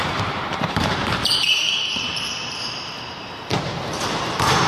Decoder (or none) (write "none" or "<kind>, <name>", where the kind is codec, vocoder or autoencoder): vocoder, BigVGAN v2